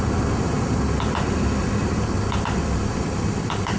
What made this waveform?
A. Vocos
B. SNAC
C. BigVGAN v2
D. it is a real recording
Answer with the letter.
C